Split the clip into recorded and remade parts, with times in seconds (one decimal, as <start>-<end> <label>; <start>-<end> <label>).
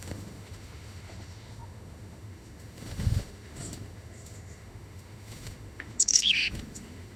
0.0-7.2 remade